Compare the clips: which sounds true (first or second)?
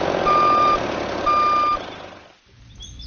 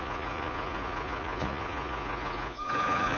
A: first